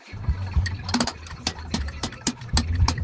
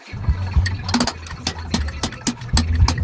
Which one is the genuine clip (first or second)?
second